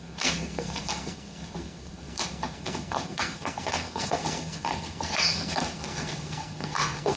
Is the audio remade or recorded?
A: remade